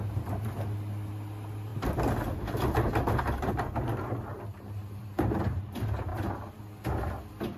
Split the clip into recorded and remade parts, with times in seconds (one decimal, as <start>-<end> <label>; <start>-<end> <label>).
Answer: 0.0-4.8 recorded; 4.8-5.4 remade; 5.4-6.1 recorded; 6.1-6.6 remade; 6.6-7.6 recorded